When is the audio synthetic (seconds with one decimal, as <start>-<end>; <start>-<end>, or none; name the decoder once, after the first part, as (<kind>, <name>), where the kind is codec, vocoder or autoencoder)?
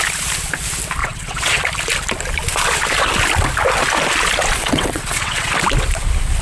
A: 1.0-1.6 (vocoder, WaveNeXt); 4.6-5.5